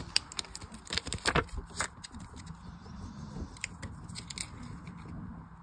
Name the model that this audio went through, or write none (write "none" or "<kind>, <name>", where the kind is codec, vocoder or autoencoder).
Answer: none